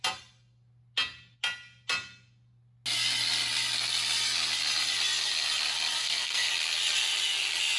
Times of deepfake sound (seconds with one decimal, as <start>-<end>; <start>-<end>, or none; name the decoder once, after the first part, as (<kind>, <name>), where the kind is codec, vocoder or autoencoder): 6.0-6.5 (codec, SNAC)